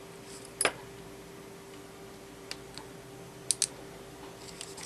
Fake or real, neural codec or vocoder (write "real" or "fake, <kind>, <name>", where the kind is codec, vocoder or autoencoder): real